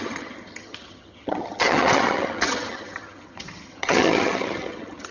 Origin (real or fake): fake